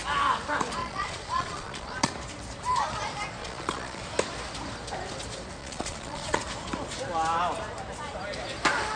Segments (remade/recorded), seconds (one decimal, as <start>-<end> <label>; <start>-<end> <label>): 0.0-0.8 recorded; 0.8-2.1 remade; 2.1-3.4 recorded; 3.4-4.0 remade; 4.0-5.6 recorded; 5.6-6.4 remade; 6.4-9.0 recorded